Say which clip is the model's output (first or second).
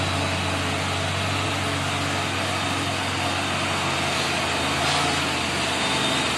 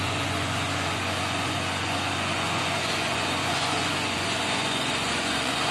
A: second